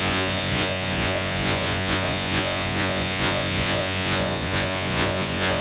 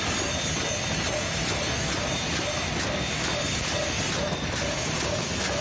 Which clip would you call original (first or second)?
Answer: second